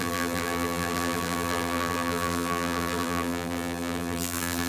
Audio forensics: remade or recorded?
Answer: remade